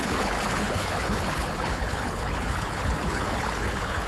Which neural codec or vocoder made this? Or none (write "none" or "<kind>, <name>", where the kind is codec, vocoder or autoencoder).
codec, HILCodec